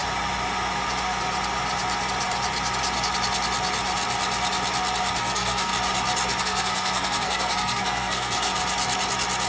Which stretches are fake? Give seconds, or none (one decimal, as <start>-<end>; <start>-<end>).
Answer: 5.2-5.7; 6.4-8.5